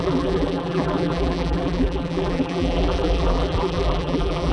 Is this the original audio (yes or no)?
no